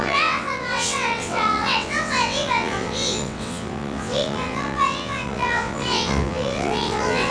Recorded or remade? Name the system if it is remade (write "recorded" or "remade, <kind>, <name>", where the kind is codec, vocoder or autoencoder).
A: remade, vocoder, WaveNeXt